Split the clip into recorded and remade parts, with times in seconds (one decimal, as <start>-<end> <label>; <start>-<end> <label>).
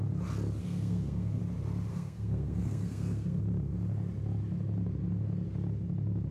0.0-0.6 recorded; 0.6-1.4 remade; 1.4-1.9 recorded; 1.9-3.4 remade; 3.4-6.3 recorded